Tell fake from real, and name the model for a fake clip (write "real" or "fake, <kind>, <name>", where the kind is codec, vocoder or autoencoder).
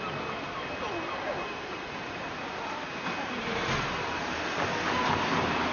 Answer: real